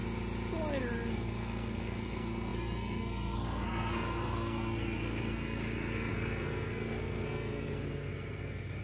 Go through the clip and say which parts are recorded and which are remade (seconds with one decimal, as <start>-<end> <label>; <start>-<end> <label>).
0.0-1.1 recorded; 1.1-8.8 remade